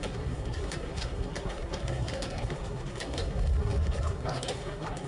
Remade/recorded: remade